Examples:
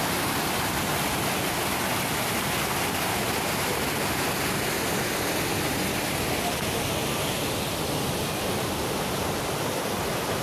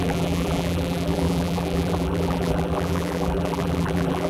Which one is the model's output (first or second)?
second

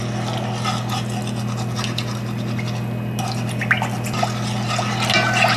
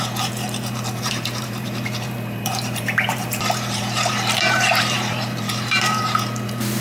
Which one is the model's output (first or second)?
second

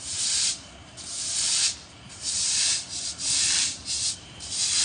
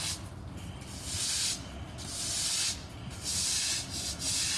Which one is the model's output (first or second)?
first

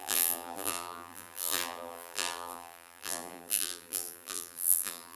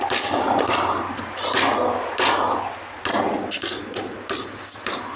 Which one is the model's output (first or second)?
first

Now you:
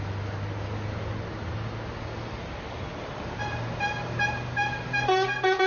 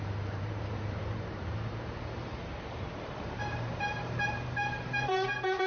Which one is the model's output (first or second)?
second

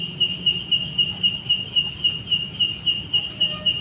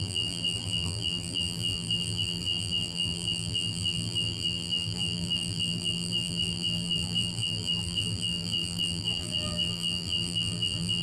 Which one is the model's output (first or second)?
second